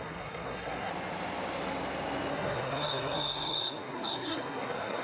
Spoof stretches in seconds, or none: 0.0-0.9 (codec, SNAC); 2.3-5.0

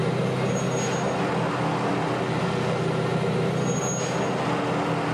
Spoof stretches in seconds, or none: none

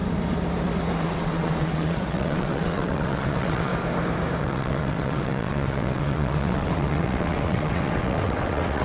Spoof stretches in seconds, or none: 1.0-3.7 (vocoder, WaveNeXt); 4.4-8.8

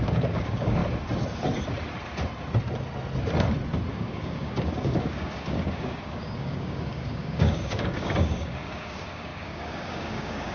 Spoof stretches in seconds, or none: 0.0-0.8 (codec, DAC); 3.9-10.5

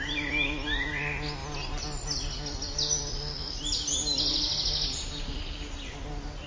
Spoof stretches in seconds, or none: none

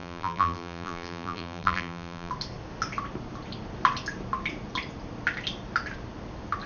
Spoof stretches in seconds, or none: 0.0-2.3 (vocoder, BigVGAN v2)